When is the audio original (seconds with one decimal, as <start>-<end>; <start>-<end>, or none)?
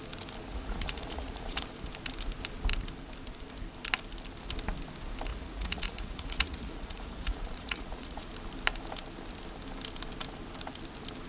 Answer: 0.0-0.5; 1.7-5.3; 8.3-11.3